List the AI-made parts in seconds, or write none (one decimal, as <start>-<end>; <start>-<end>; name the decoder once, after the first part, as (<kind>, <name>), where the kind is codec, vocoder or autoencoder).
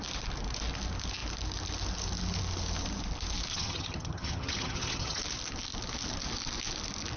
3.5-5.2 (vocoder, HiFi-GAN)